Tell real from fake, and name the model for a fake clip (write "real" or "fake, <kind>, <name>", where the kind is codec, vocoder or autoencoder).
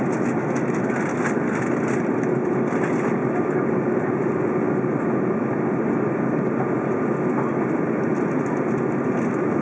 real